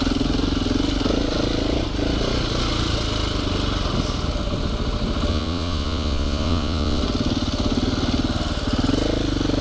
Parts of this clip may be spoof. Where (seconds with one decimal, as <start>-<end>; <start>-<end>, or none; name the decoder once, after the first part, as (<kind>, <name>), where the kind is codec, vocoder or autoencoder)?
5.3-7.0 (vocoder, Vocos)